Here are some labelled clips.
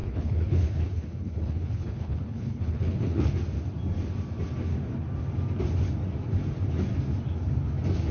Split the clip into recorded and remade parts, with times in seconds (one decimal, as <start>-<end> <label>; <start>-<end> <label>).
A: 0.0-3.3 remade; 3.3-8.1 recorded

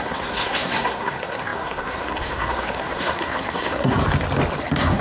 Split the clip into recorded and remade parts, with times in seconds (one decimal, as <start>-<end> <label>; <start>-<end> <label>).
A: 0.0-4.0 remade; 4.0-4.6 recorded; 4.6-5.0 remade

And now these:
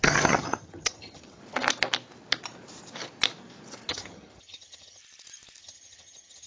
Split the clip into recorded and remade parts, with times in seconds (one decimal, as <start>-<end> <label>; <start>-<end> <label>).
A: 0.0-1.4 remade; 1.4-3.9 recorded; 3.9-5.0 remade; 5.0-5.6 recorded; 5.6-6.5 remade

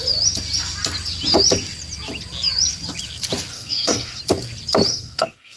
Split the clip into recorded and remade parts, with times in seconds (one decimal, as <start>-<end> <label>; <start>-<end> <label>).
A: 0.0-3.5 recorded; 3.5-4.2 remade; 4.2-4.9 recorded; 4.9-5.6 remade

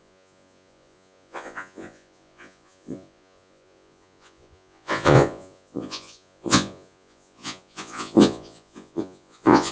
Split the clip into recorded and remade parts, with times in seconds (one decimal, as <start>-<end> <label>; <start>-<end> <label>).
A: 0.0-9.7 remade

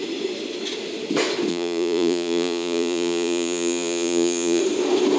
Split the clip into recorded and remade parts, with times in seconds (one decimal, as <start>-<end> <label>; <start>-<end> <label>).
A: 0.0-1.5 recorded; 1.5-4.6 remade; 4.6-5.2 recorded